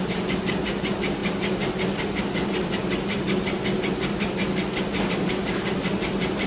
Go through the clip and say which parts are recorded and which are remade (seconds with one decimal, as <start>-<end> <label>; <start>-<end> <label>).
0.0-6.5 recorded